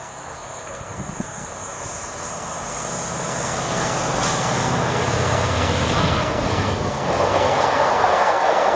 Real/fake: fake